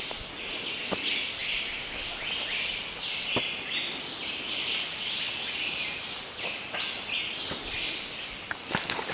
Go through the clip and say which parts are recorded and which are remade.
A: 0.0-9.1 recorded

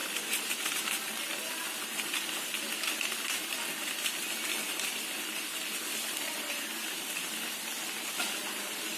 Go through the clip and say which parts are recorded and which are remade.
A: 0.0-9.0 recorded

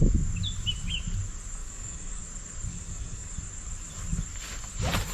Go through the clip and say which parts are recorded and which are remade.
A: 0.0-1.6 recorded; 1.6-2.2 remade; 2.2-2.7 recorded; 2.7-3.3 remade; 3.3-5.1 recorded

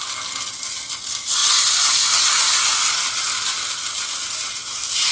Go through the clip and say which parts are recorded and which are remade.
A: 0.0-5.1 recorded

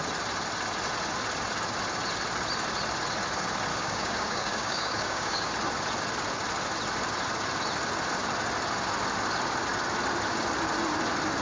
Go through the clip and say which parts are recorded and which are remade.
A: 0.0-3.7 recorded; 3.7-5.5 remade; 5.5-11.4 recorded